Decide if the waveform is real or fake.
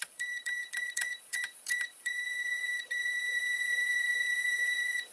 fake